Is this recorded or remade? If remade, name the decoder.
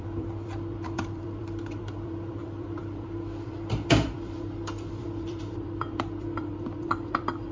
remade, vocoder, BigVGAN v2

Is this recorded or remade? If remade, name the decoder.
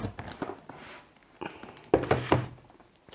recorded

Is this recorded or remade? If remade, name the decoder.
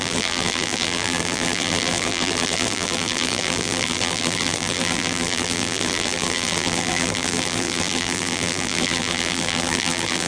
remade, vocoder, BigVGAN v2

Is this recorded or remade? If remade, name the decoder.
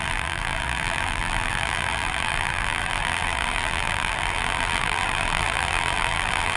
remade, vocoder, BigVGAN v2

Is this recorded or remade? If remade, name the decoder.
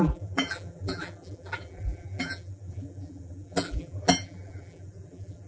remade, vocoder, BigVGAN v2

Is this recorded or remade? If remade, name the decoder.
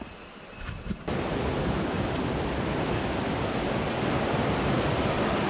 recorded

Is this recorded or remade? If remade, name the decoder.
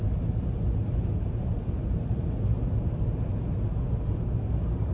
recorded